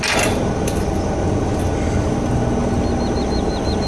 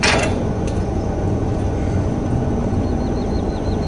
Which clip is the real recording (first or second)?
first